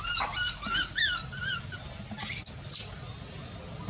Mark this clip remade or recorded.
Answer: recorded